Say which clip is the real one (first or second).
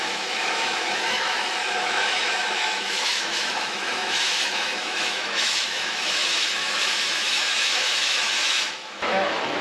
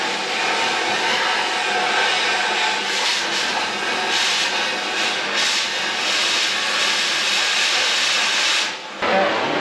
second